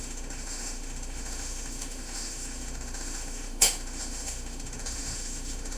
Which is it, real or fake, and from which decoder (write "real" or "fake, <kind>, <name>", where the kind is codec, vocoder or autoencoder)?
fake, autoencoder, DAC-VAE